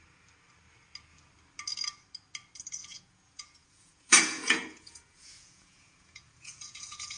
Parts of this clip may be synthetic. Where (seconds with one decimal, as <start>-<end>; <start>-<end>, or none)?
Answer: 2.8-7.2